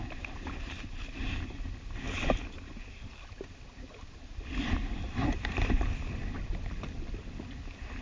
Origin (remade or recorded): recorded